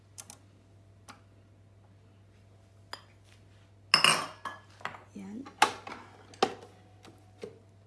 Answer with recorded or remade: recorded